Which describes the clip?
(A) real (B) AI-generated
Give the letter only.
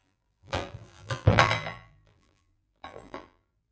B